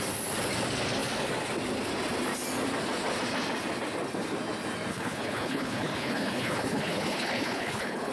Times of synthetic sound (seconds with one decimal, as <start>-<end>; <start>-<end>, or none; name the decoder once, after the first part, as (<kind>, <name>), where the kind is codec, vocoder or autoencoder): 4.9-8.1 (codec, HILCodec)